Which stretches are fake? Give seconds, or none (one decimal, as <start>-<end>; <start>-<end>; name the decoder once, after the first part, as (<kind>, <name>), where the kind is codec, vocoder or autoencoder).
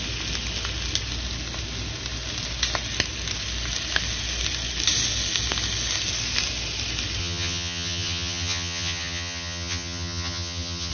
7.2-10.9 (vocoder, HiFi-GAN)